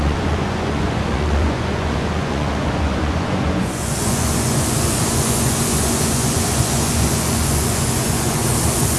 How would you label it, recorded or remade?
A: remade